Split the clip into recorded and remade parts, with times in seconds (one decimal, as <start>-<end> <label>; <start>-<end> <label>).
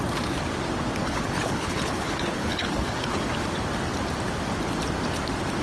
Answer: 0.0-1.0 recorded; 1.0-3.2 remade; 3.2-5.6 recorded